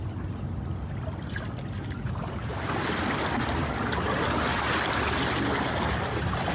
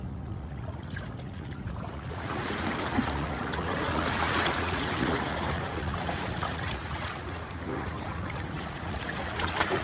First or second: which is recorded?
first